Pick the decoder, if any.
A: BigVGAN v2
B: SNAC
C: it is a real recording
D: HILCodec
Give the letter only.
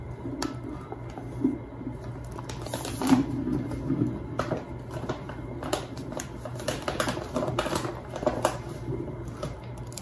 C